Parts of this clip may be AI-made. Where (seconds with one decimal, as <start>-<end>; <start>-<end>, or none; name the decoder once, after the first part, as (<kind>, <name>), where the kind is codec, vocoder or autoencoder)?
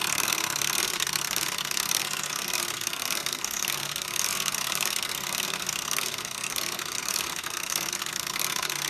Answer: 0.0-8.9 (codec, SNAC)